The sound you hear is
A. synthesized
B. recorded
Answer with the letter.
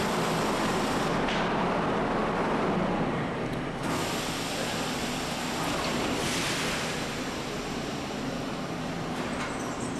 B